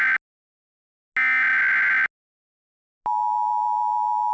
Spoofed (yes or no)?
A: no